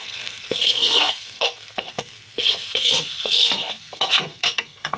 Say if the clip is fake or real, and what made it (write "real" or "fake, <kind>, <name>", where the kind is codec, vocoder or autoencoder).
fake, codec, SNAC